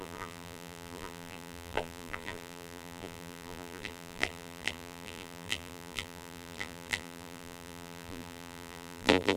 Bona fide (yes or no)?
no